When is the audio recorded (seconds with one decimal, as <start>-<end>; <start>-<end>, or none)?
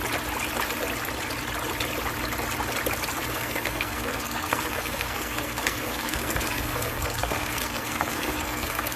0.0-3.3